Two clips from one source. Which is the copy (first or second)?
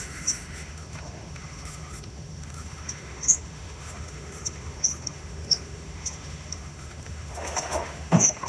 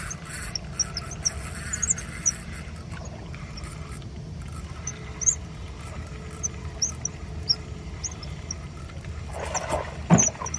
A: first